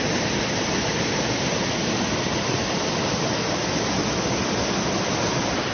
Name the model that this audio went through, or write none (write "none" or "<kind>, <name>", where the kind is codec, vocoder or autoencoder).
none